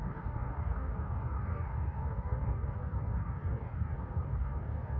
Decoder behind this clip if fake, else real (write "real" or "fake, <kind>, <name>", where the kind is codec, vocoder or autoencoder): fake, codec, DAC